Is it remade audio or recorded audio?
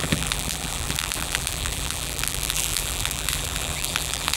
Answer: remade